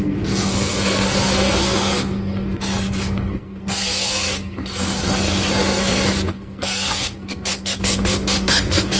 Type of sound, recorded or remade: remade